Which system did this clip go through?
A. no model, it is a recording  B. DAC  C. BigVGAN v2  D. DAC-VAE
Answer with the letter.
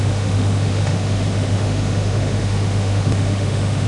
D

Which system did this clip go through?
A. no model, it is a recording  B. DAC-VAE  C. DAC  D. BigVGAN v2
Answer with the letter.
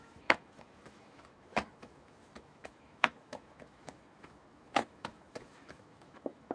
B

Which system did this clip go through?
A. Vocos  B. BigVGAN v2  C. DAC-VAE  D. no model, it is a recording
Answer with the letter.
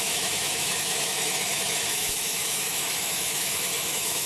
C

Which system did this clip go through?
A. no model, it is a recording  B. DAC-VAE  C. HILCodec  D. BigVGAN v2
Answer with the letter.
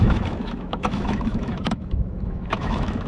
B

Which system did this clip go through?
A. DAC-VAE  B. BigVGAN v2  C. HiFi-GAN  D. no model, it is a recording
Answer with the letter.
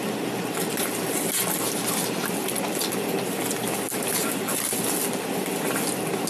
D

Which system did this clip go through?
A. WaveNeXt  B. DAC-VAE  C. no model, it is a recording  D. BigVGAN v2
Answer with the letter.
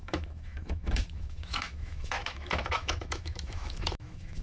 B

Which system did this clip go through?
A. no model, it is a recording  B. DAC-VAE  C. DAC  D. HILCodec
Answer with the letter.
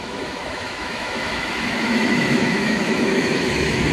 B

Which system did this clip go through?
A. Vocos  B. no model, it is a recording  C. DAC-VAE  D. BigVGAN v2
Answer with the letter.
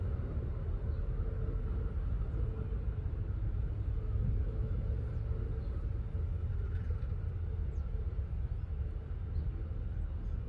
B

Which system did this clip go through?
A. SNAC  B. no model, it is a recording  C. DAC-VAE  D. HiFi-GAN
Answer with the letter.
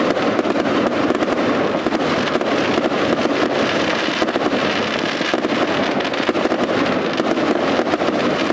B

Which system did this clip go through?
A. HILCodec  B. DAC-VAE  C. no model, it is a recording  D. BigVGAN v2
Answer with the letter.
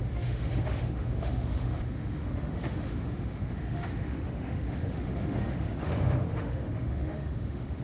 B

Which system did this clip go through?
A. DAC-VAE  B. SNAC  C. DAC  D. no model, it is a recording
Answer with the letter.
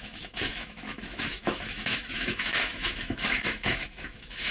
A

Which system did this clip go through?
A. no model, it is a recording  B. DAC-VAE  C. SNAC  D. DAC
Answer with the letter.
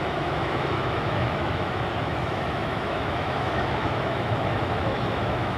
B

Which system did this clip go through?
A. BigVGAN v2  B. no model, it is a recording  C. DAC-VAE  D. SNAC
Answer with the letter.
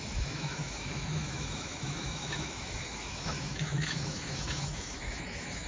C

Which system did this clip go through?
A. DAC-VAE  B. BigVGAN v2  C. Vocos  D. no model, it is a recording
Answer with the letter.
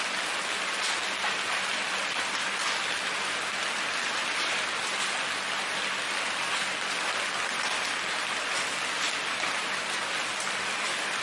D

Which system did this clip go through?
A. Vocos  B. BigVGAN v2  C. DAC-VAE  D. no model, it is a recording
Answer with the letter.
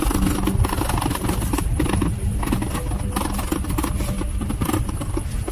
D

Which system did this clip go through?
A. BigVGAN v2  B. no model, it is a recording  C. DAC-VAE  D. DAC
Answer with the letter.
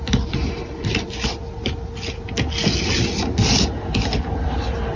B